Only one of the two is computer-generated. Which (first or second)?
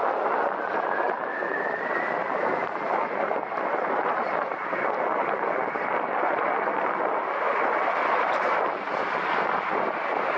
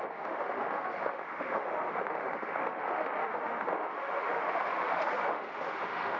second